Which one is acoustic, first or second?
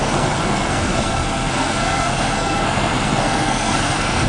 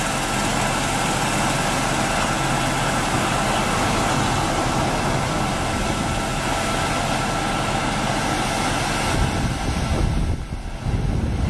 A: second